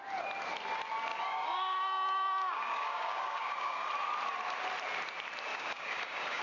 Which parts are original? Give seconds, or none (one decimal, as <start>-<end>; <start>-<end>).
0.0-1.1; 3.9-5.5